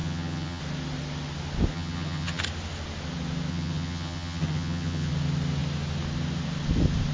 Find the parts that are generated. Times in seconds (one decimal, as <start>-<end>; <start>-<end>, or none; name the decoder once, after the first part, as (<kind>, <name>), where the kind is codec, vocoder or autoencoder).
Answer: 0.0-0.6 (vocoder, HiFi-GAN); 1.7-2.4; 3.5-5.1